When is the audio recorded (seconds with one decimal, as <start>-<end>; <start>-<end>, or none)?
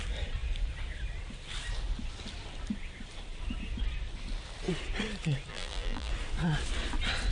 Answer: 0.0-5.5; 6.1-7.3